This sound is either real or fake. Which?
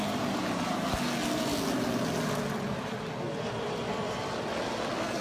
real